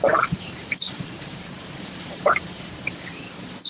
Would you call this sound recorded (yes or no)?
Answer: no